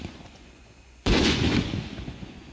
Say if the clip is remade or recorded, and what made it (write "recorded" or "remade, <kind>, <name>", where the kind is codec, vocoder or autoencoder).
remade, vocoder, Vocos